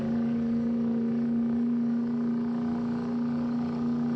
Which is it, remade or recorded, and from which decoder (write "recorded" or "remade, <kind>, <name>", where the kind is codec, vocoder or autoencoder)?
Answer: remade, codec, DAC